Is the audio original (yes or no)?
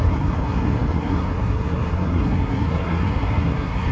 no